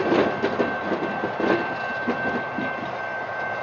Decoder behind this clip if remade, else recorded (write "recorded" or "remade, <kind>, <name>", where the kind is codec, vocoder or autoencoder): recorded